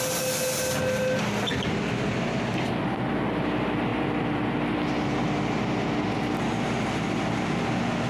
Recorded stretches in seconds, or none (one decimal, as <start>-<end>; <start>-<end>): 0.0-8.1

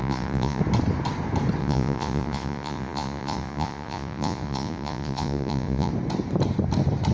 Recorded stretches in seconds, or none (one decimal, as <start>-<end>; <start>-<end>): 0.6-1.6; 5.9-7.1